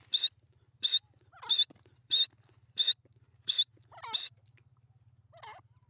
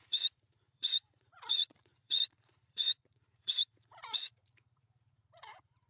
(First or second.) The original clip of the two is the first